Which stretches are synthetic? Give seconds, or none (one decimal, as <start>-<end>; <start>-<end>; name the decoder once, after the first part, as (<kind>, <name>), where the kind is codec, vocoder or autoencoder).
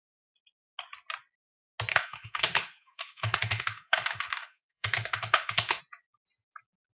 1.9-5.8 (autoencoder, DAC-VAE)